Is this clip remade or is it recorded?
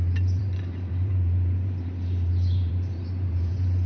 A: remade